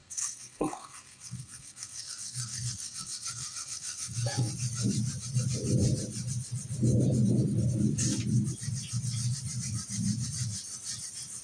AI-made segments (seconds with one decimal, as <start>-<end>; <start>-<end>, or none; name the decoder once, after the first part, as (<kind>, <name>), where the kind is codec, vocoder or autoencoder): 0.0-4.5 (codec, SNAC)